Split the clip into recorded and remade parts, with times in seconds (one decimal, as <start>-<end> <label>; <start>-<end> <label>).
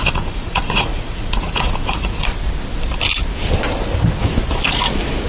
0.0-2.3 remade; 2.3-5.3 recorded